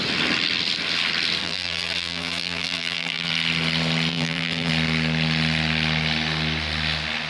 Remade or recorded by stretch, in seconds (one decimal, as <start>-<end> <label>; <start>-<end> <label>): 0.0-1.4 recorded; 1.4-3.3 remade; 3.3-4.1 recorded; 4.1-4.7 remade; 4.7-7.3 recorded